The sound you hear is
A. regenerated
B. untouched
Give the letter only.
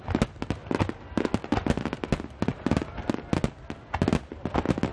B